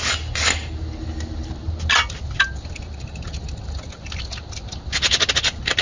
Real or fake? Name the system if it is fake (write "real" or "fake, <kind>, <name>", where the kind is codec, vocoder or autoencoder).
real